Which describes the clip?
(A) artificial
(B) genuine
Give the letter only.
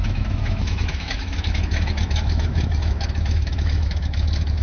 A